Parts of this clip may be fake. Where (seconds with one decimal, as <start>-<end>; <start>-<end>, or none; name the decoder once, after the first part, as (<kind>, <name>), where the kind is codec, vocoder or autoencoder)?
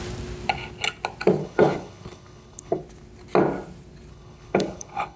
1.4-2.8 (codec, HILCodec); 4.1-5.2